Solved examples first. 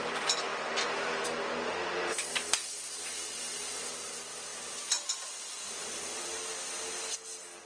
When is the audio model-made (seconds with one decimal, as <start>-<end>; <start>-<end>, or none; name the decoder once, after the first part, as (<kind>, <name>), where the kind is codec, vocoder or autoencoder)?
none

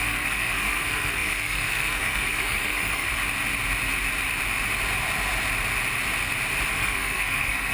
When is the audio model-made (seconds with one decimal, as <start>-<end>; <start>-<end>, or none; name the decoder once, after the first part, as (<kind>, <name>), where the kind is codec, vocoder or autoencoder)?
0.0-3.1 (codec, SNAC); 6.7-7.7

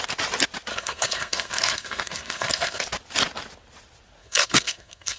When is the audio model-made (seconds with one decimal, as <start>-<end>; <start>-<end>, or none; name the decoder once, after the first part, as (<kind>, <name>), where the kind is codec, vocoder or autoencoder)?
0.7-2.8 (codec, SNAC); 4.2-5.2

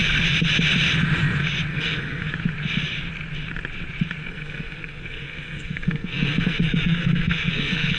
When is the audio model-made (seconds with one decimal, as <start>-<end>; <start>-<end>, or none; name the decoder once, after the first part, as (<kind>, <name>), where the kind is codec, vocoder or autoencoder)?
1.7-2.3 (codec, SNAC); 4.2-8.0

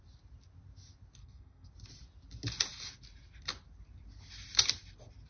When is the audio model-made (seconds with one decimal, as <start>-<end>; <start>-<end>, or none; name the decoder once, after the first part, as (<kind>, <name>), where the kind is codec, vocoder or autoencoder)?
1.2-1.7 (codec, SNAC)

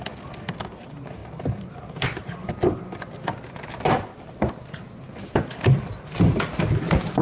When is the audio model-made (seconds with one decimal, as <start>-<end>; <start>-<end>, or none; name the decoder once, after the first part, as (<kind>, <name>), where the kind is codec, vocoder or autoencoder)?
2.4-3.3 (vocoder, BigVGAN v2); 4.1-7.2